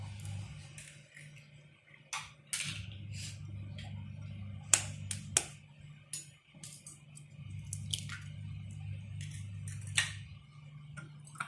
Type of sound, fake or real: real